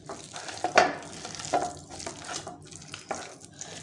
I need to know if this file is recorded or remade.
recorded